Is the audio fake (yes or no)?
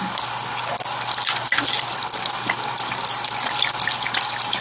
no